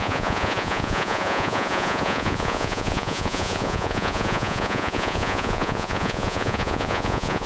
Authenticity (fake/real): fake